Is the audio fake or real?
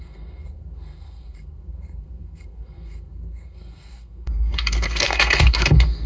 fake